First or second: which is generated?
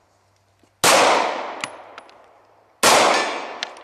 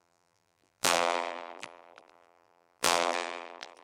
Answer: second